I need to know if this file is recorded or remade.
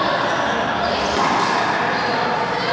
recorded